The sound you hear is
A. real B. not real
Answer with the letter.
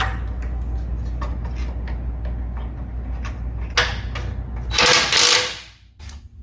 A